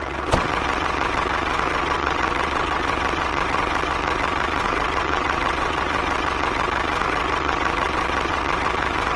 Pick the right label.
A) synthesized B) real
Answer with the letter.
A